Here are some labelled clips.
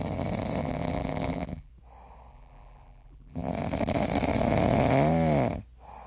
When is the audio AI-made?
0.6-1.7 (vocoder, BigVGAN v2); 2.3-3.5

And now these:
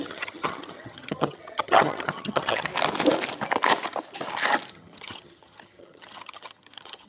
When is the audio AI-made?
0.0-2.7 (vocoder, HiFi-GAN); 4.7-7.1

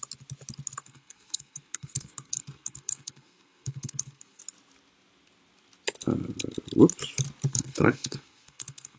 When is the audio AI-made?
0.8-4.4 (codec, SNAC); 7.5-9.0